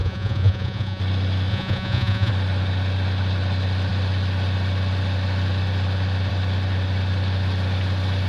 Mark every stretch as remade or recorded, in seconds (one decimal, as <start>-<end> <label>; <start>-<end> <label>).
0.0-1.0 remade; 1.0-1.5 recorded; 1.5-2.3 remade; 2.3-8.3 recorded